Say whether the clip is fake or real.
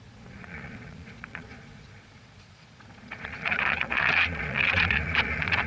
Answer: fake